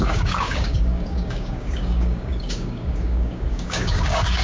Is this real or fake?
fake